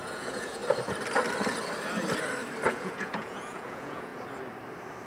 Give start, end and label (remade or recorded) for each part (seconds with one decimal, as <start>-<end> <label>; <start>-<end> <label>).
0.0-0.6 remade; 0.6-2.7 recorded; 2.7-4.1 remade; 4.1-5.1 recorded